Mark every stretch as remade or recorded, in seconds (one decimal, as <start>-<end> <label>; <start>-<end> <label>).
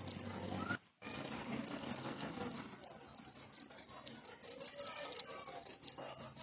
0.0-1.4 recorded; 1.4-2.6 remade; 2.6-6.4 recorded